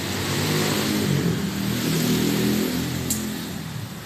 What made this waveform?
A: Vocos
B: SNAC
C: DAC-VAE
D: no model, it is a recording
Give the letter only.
D